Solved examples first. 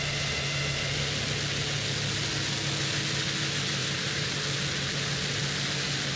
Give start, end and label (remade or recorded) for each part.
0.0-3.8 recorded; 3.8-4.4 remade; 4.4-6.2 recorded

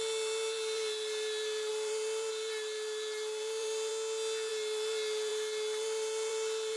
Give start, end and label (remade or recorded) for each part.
0.0-3.9 remade; 3.9-4.5 recorded; 4.5-6.8 remade

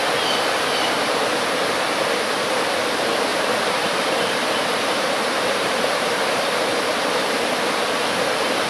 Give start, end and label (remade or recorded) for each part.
0.0-3.3 recorded; 3.3-7.2 remade; 7.2-8.7 recorded

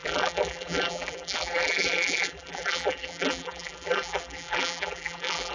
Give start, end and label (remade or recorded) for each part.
0.0-5.5 remade

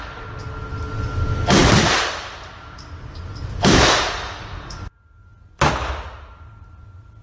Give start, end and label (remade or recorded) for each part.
0.0-1.6 recorded; 1.6-5.9 remade; 5.9-7.2 recorded

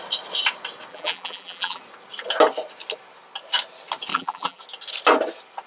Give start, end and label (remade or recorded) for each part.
0.0-0.9 recorded; 0.9-1.8 remade; 1.8-4.1 recorded; 4.1-4.6 remade; 4.6-5.7 recorded

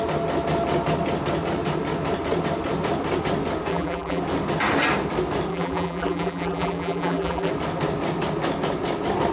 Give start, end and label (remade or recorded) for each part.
0.0-3.7 recorded; 3.7-4.2 remade; 4.2-5.5 recorded; 5.5-7.5 remade; 7.5-9.3 recorded

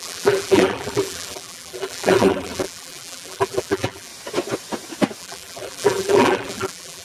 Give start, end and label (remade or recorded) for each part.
0.0-4.1 remade; 4.1-5.2 recorded; 5.2-7.0 remade